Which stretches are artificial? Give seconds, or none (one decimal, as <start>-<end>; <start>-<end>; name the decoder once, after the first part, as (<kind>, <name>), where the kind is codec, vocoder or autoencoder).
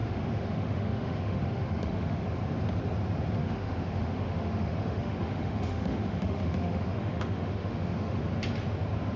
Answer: 0.0-2.2 (autoencoder, DAC-VAE); 3.4-8.2